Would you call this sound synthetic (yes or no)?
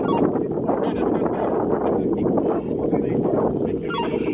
no